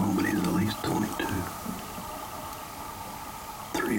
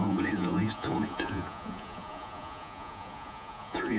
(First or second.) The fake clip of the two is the second